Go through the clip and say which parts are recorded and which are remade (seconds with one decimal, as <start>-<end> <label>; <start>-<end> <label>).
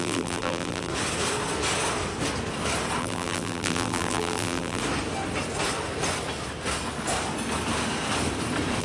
0.0-0.9 remade; 0.9-3.0 recorded; 3.0-4.8 remade; 4.8-8.8 recorded